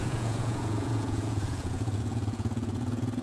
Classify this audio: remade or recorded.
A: remade